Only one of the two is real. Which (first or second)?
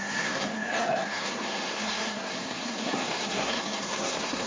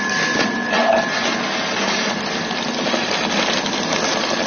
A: second